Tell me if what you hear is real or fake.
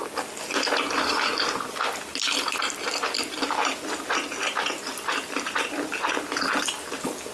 real